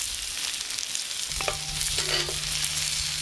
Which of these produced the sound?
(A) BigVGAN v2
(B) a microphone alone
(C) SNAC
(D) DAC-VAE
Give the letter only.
B